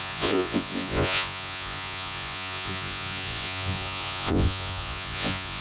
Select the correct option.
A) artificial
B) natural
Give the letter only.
A